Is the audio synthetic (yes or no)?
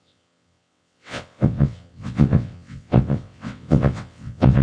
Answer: yes